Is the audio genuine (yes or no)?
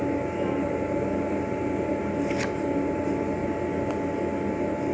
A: yes